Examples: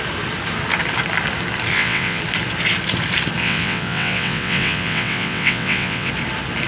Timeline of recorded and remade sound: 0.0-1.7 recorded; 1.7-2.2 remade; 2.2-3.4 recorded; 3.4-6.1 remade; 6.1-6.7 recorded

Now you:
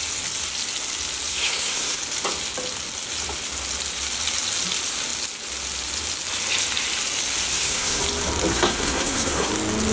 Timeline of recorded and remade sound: 0.0-1.3 recorded; 1.3-2.0 remade; 2.0-7.5 recorded; 7.5-8.0 remade; 8.0-8.5 recorded; 8.5-9.5 remade; 9.5-9.9 recorded

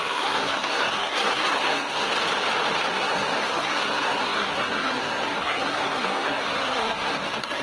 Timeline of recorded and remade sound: 0.0-2.1 remade; 2.1-2.9 recorded; 2.9-7.6 remade

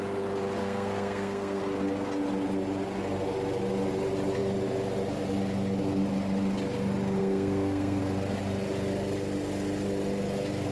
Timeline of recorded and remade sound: 0.0-0.6 recorded; 0.6-1.6 remade; 1.6-7.2 recorded; 7.2-8.0 remade; 8.0-10.7 recorded

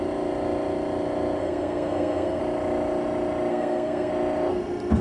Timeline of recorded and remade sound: 0.0-1.4 recorded; 1.4-2.4 remade; 2.4-3.5 recorded; 3.5-4.1 remade; 4.1-5.0 recorded